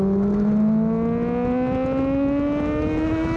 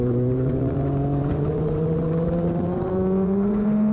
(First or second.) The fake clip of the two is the second